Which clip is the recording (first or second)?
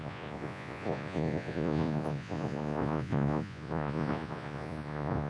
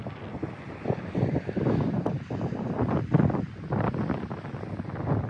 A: second